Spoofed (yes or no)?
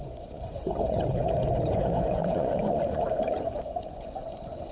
yes